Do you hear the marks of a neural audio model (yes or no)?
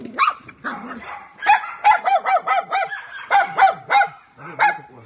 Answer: yes